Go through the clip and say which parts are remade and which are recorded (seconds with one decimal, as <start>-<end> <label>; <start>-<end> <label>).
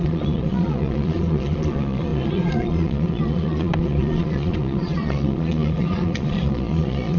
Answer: 0.0-7.2 remade